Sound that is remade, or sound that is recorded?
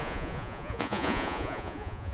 remade